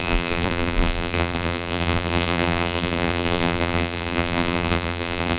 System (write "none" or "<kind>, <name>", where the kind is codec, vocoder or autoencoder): vocoder, BigVGAN v2